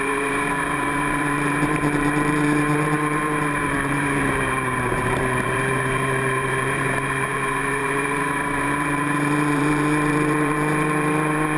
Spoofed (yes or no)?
yes